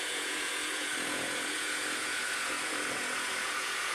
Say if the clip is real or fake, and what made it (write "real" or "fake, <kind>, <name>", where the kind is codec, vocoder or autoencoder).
fake, vocoder, Vocos